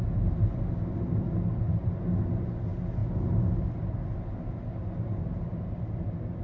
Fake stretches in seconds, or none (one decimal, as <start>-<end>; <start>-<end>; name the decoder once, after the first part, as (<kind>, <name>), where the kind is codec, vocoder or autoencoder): none